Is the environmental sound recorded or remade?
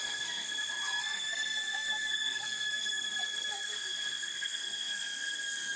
remade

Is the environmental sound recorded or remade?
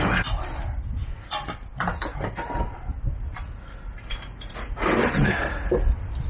recorded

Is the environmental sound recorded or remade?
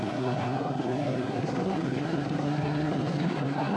remade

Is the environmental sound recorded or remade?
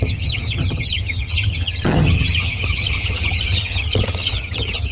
remade